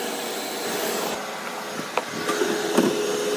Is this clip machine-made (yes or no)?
no